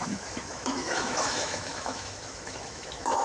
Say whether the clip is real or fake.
fake